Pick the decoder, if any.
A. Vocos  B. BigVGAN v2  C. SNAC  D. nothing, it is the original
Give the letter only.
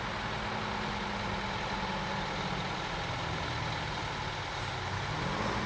D